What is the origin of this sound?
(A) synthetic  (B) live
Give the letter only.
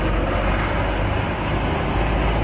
B